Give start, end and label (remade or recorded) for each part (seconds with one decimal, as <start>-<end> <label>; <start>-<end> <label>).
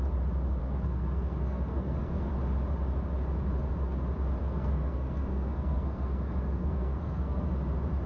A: 0.0-0.6 recorded; 0.6-2.3 remade; 2.3-4.4 recorded; 4.4-7.5 remade; 7.5-8.1 recorded